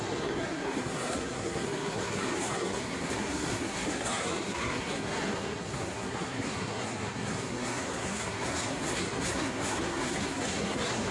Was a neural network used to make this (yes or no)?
yes